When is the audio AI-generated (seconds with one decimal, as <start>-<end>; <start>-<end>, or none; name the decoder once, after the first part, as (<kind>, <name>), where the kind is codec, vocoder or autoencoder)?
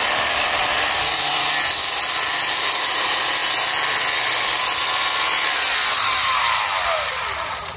0.0-1.8 (vocoder, BigVGAN v2); 2.9-3.4; 7.3-7.8